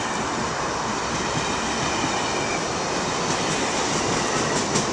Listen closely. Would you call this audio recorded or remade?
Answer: recorded